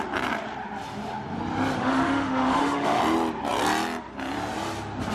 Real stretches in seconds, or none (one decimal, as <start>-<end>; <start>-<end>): 0.0-1.8; 3.0-5.1

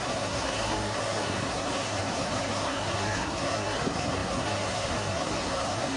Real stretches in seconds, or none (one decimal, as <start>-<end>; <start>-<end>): none

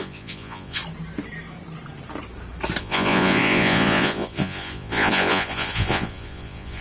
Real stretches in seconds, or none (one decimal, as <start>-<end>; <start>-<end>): 0.8-2.8

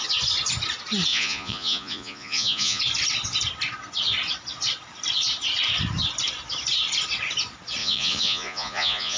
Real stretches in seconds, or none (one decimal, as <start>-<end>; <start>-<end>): 0.0-1.1; 2.8-7.8

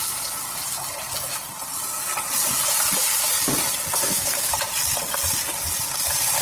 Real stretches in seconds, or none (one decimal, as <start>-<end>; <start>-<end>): 0.0-4.0; 4.5-6.4

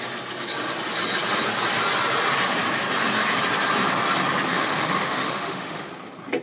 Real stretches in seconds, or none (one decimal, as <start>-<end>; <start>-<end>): 0.0-4.5; 5.9-6.4